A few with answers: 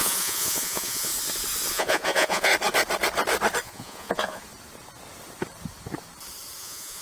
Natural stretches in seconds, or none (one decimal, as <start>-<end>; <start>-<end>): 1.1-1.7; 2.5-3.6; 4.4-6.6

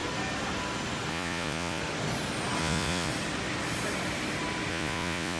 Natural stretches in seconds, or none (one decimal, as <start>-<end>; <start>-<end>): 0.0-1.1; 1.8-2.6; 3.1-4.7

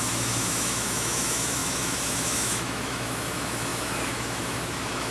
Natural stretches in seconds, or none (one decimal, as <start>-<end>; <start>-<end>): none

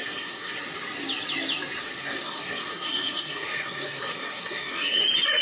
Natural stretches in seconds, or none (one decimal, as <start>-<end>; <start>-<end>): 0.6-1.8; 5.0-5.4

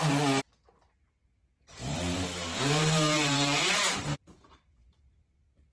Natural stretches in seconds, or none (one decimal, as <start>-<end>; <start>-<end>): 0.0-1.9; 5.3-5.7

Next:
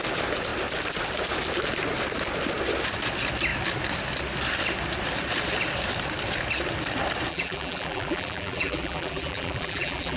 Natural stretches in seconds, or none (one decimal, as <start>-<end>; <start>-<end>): 0.0-7.3

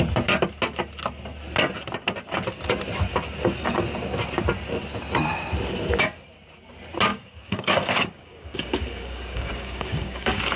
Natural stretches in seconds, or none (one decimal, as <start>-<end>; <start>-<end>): 0.0-7.1